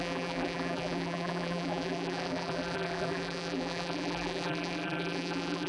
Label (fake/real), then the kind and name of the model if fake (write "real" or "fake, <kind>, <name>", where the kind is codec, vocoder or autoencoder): fake, vocoder, BigVGAN v2